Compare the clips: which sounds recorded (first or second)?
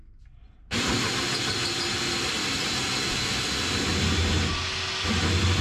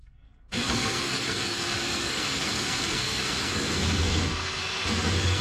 first